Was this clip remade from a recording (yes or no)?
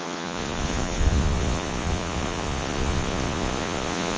yes